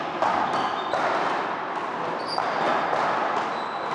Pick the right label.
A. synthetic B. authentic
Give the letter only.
B